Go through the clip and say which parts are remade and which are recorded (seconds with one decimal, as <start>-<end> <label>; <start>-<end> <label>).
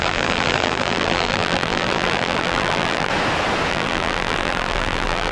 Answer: 0.0-3.1 remade; 3.1-3.7 recorded; 3.7-5.3 remade